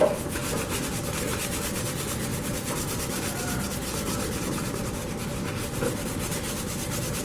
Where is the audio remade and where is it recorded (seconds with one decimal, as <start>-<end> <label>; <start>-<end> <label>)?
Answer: 0.0-7.2 recorded